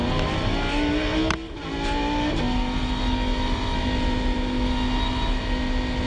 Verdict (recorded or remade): recorded